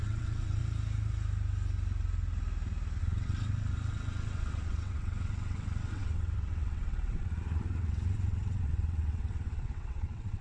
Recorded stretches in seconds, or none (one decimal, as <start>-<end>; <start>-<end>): 0.6-3.0